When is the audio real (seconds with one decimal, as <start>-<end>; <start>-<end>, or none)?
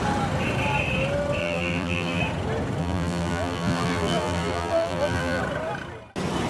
0.0-1.4; 2.2-2.8; 5.4-6.5